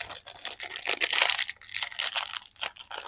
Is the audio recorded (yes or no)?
no